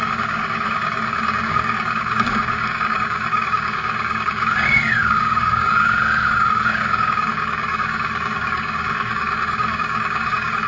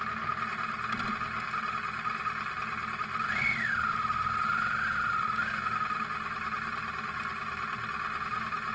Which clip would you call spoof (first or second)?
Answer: first